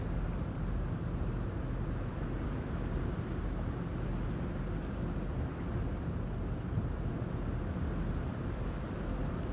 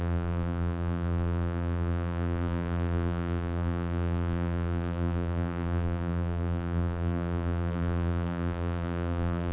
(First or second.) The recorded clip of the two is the first